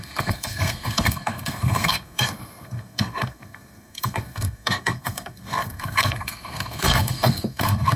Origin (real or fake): fake